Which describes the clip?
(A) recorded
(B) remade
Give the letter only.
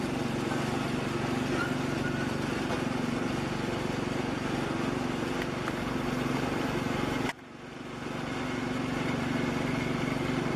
A